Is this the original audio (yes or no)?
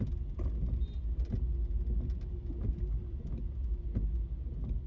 yes